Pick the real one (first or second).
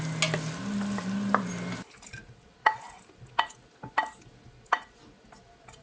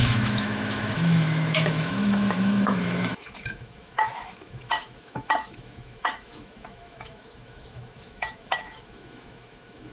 first